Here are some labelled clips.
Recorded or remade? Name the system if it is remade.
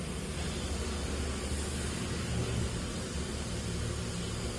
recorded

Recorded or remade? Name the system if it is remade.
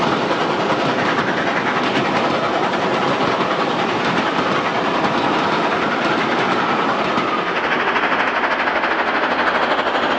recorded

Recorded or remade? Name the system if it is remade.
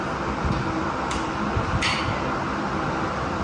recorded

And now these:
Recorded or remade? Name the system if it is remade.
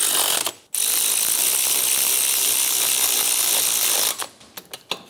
recorded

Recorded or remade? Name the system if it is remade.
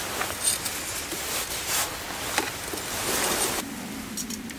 recorded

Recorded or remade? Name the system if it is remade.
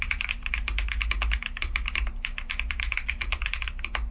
remade, vocoder, BigVGAN v2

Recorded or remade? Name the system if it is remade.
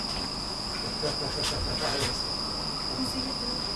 recorded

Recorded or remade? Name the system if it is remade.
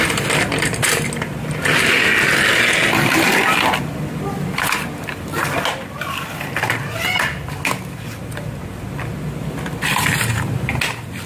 recorded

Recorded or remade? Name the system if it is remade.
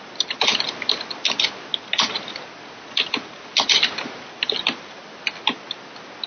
recorded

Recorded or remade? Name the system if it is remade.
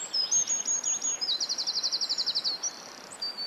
recorded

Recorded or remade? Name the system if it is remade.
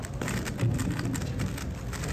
recorded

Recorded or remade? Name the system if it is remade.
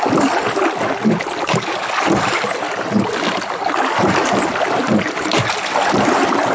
recorded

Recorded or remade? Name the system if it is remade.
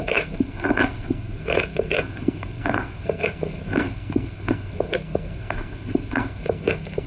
remade, codec, SNAC